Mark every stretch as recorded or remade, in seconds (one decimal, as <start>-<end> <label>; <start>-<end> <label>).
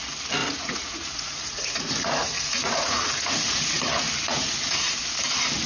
0.0-0.4 recorded; 0.4-3.8 remade; 3.8-4.3 recorded; 4.3-5.0 remade; 5.0-5.7 recorded